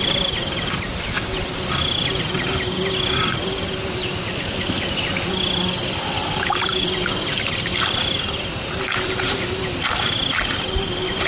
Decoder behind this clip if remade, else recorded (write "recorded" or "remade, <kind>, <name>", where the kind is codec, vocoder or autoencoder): recorded